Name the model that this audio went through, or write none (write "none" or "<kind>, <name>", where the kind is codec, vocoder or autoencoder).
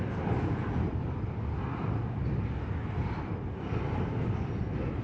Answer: none